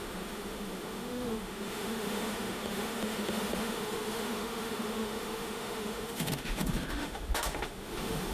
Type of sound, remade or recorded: remade